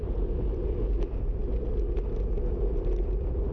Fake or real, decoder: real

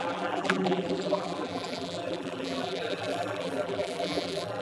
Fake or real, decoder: fake, vocoder, BigVGAN v2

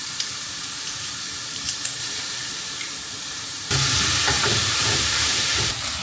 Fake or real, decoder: fake, vocoder, BigVGAN v2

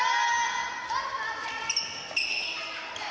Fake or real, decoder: real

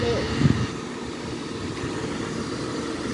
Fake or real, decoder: real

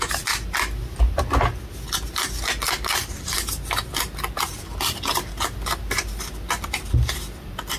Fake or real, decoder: real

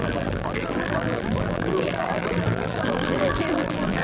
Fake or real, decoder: fake, vocoder, BigVGAN v2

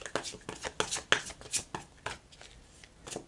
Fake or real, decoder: real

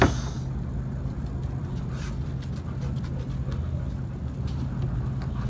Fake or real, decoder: real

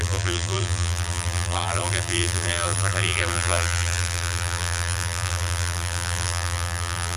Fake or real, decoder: fake, vocoder, BigVGAN v2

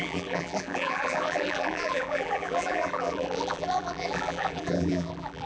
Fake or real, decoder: fake, vocoder, BigVGAN v2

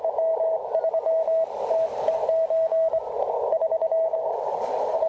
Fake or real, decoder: real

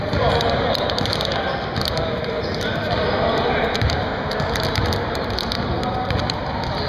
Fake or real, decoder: real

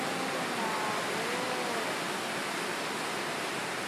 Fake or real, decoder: real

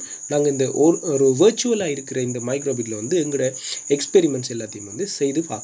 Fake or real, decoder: real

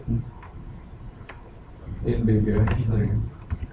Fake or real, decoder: fake, vocoder, BigVGAN v2